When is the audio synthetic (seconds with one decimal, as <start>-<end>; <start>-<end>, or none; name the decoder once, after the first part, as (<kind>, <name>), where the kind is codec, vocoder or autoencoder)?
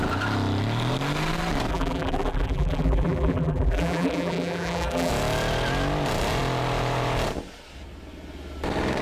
1.7-5.1 (vocoder, BigVGAN v2)